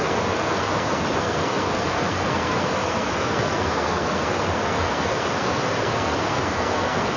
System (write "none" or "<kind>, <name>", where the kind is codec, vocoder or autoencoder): codec, SNAC